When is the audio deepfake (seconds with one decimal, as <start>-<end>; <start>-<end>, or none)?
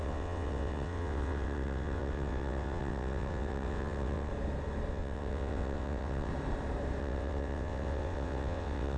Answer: 0.0-4.3; 4.9-6.3; 7.0-9.0